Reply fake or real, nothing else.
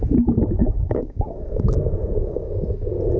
fake